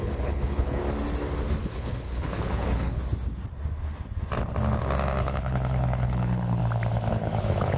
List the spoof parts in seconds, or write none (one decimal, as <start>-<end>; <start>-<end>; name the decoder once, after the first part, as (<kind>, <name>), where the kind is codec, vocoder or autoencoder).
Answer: 0.0-0.8 (codec, HILCodec); 1.6-3.0; 5.2-6.6; 7.1-7.8

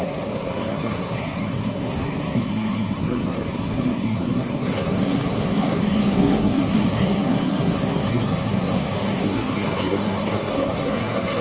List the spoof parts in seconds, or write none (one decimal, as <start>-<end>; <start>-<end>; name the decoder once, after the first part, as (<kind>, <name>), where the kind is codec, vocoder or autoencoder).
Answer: 0.0-11.4 (codec, SNAC)

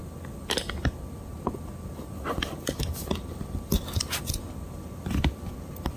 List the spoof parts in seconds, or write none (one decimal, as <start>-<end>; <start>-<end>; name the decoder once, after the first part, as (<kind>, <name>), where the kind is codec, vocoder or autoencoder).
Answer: none

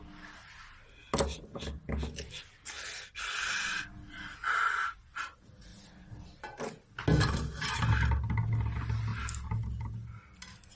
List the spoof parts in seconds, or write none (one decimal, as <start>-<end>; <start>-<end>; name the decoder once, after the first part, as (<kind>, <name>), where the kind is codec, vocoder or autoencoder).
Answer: none

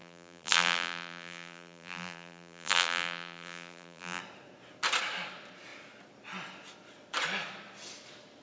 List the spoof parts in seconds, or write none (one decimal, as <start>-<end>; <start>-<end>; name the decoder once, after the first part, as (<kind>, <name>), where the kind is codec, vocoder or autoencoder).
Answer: 0.0-4.2 (vocoder, BigVGAN v2)

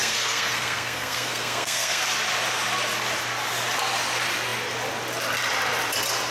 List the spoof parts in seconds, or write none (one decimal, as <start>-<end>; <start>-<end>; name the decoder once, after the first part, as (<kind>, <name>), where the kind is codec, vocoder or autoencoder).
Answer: 0.0-2.0 (codec, SNAC)

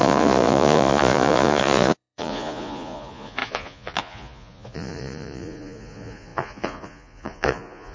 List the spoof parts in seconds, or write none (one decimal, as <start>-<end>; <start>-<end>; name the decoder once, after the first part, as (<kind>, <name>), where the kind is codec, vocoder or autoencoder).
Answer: 0.0-7.9 (vocoder, Vocos)